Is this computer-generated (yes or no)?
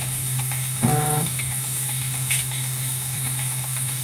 yes